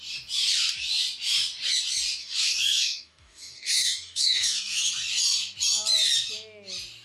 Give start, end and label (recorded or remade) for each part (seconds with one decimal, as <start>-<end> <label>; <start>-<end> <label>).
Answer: 0.0-2.2 recorded; 2.2-4.9 remade; 4.9-7.0 recorded